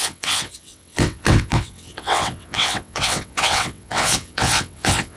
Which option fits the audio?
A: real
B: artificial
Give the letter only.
B